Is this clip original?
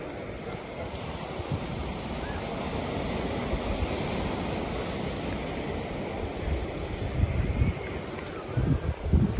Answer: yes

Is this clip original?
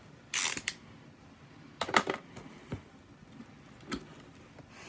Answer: yes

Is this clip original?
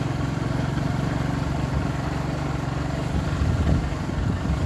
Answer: yes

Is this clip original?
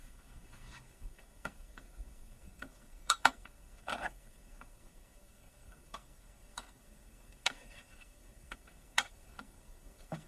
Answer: no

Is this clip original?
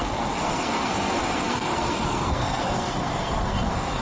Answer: no